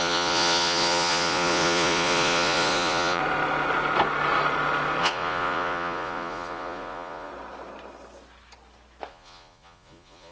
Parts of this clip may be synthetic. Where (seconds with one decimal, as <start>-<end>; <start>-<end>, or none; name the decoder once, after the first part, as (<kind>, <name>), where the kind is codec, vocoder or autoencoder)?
0.0-3.2 (vocoder, Vocos); 5.0-7.3; 9.1-10.3